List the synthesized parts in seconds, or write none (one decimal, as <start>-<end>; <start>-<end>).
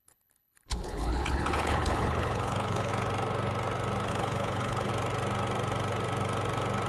0.0-2.9; 4.1-4.9